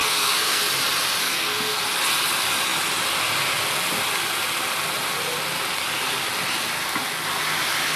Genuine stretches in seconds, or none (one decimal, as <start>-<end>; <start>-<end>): 0.6-1.2; 1.8-8.0